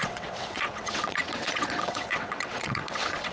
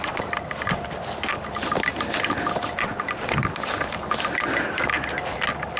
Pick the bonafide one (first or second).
second